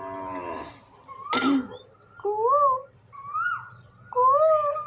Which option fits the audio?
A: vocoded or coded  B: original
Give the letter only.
B